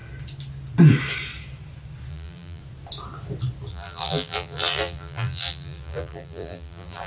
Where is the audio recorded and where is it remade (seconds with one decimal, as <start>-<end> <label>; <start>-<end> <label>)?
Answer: 0.0-2.1 recorded; 2.1-2.6 remade; 2.6-3.7 recorded; 3.7-7.1 remade